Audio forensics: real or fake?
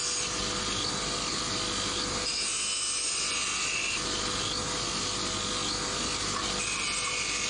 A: real